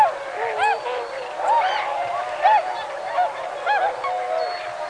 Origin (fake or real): real